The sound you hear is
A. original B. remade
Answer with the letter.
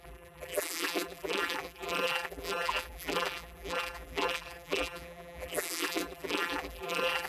B